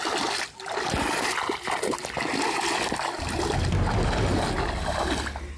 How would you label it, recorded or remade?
recorded